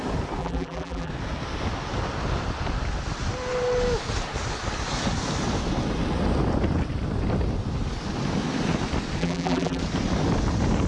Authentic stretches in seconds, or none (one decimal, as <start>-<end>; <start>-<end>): 0.0-0.4; 1.1-9.2; 9.8-10.9